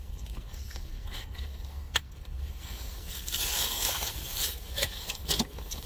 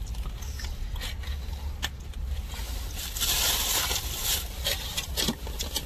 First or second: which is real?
second